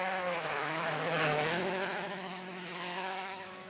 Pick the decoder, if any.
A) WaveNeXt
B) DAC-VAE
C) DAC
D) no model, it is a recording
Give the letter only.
B